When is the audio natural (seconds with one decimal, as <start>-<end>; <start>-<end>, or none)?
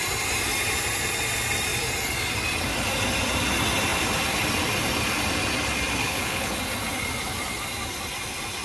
0.0-6.0; 6.6-8.6